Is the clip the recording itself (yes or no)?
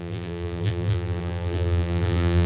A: no